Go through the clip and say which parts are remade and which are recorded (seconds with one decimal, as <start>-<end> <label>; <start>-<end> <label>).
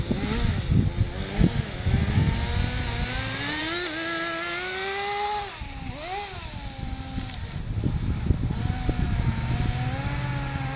0.0-10.8 recorded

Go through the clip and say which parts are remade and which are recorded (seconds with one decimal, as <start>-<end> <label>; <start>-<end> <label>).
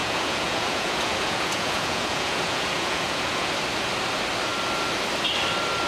0.0-3.5 remade; 3.5-5.9 recorded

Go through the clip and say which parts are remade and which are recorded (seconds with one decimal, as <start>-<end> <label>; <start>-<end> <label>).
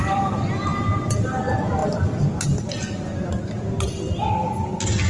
0.0-5.1 recorded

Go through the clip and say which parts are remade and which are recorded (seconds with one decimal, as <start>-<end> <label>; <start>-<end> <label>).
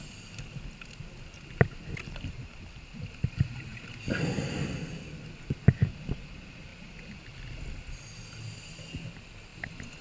0.0-10.0 recorded